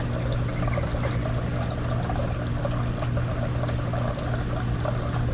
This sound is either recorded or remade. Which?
recorded